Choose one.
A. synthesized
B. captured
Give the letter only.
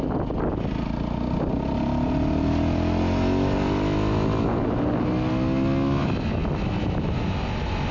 B